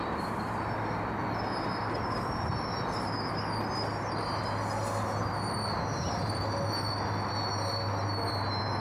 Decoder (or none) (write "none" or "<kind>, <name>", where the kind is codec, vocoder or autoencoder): none